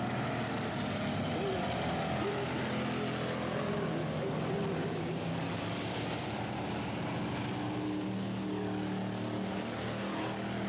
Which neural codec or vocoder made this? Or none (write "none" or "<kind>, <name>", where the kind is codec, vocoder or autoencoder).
none